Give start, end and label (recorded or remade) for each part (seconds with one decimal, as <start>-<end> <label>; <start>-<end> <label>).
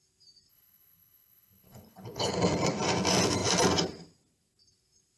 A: 0.0-0.5 recorded; 0.5-2.3 remade; 2.3-5.2 recorded